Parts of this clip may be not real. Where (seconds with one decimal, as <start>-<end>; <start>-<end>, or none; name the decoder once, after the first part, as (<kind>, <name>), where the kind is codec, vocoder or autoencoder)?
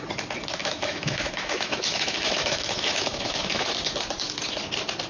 0.6-3.7 (autoencoder, DAC-VAE)